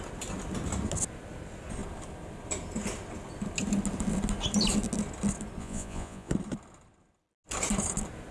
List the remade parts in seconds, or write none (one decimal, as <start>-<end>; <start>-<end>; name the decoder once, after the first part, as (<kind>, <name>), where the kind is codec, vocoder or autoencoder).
5.6-6.3 (vocoder, Vocos)